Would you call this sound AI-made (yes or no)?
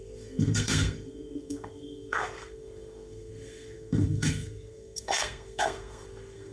yes